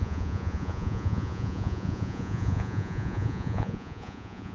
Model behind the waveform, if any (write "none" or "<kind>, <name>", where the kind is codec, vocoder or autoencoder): vocoder, Vocos